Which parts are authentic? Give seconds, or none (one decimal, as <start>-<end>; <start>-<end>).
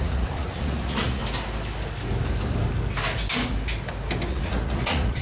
1.2-4.3